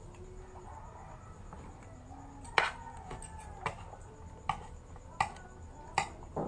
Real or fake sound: real